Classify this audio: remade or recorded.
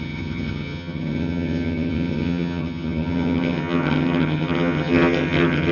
remade